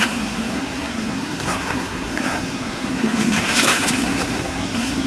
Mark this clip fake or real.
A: fake